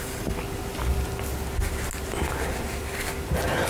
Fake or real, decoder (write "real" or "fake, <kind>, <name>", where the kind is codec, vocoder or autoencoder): real